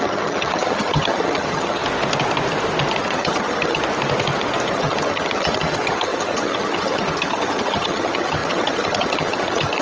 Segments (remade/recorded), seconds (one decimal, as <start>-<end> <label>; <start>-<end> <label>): 0.0-1.8 remade; 1.8-3.0 recorded; 3.0-3.8 remade; 3.8-4.7 recorded; 4.7-9.8 remade